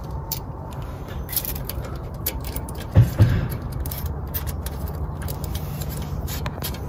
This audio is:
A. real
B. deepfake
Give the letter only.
B